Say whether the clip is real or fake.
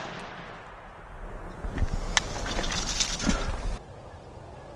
real